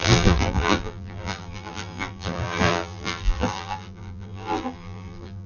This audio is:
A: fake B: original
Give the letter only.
A